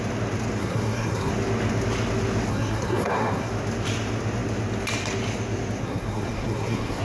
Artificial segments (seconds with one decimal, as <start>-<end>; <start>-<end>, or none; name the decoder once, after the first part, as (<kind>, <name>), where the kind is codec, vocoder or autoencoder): 0.6-1.3 (codec, SNAC); 2.5-3.5; 5.8-7.0